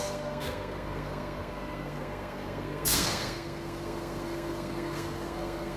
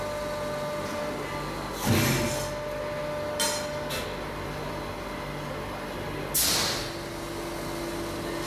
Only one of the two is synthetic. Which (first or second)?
first